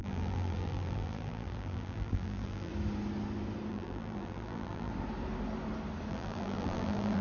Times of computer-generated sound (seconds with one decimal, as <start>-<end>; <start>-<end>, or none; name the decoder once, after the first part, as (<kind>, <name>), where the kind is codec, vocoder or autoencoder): 0.0-2.7 (vocoder, BigVGAN v2); 3.7-4.9; 6.1-7.2

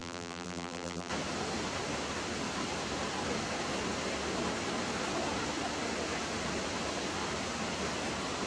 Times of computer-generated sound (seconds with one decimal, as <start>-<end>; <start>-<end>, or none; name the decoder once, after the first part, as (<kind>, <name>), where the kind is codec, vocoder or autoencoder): 0.0-1.1 (vocoder, BigVGAN v2)

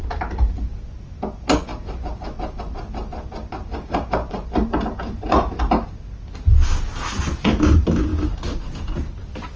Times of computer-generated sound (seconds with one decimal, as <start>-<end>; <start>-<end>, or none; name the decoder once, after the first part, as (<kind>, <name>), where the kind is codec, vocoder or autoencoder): 1.7-6.0 (vocoder, BigVGAN v2); 8.1-8.9

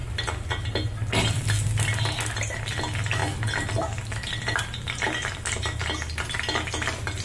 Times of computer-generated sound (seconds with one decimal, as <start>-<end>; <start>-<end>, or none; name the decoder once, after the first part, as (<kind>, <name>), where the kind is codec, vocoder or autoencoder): 3.2-6.2 (vocoder, BigVGAN v2)

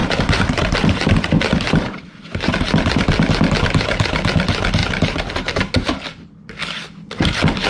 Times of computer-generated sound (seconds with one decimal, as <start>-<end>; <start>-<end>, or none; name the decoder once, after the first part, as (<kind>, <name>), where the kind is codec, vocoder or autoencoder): 0.0-3.3 (vocoder, BigVGAN v2); 4.8-5.3